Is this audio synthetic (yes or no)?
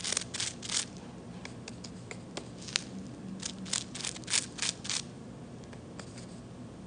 no